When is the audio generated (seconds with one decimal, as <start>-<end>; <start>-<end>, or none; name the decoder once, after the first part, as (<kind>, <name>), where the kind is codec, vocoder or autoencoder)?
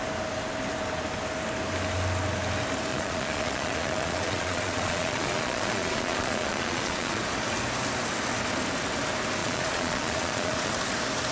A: 2.9-7.2 (vocoder, Vocos); 9.4-10.7